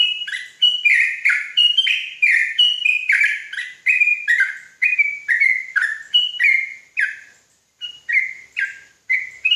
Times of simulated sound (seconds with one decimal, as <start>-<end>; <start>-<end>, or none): 0.0-9.6

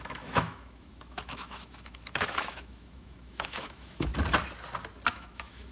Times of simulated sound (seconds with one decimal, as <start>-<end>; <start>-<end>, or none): 0.0-4.1; 5.1-5.7

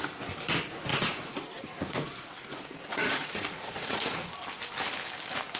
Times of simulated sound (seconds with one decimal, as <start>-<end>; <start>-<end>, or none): 0.9-4.3

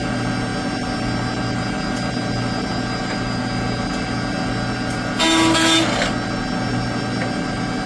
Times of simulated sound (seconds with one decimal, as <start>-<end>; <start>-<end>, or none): none

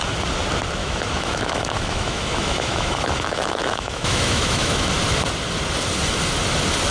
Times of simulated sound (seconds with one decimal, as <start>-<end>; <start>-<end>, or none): 0.8-4.9

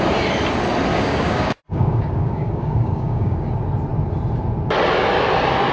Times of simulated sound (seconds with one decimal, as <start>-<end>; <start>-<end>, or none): 0.9-3.5

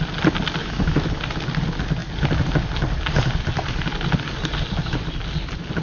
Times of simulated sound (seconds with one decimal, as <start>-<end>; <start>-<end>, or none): 0.6-1.2